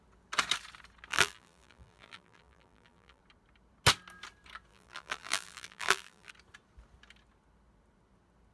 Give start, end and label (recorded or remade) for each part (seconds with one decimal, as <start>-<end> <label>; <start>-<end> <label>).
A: 0.0-1.1 recorded; 1.1-3.2 remade; 3.2-4.7 recorded; 4.7-6.3 remade; 6.3-8.5 recorded